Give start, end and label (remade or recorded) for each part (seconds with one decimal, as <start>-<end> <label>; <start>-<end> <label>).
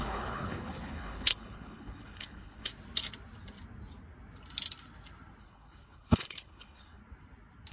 0.0-2.7 remade; 2.7-5.4 recorded; 5.4-7.0 remade; 7.0-7.7 recorded